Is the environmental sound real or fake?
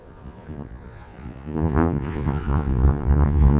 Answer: fake